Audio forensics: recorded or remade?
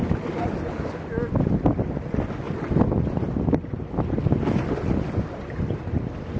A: recorded